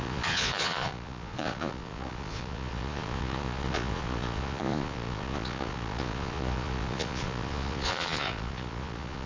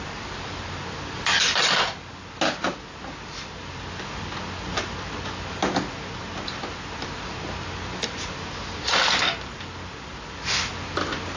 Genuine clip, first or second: second